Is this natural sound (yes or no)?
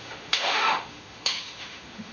no